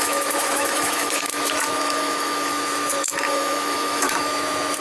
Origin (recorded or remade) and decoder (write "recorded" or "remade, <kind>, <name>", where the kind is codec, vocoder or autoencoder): remade, autoencoder, DAC-VAE